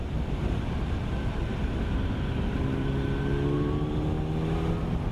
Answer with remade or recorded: recorded